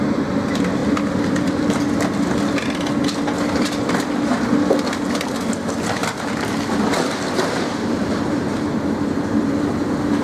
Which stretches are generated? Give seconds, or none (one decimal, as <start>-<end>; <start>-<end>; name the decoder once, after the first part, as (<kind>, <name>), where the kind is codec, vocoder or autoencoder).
6.0-9.4 (vocoder, BigVGAN v2)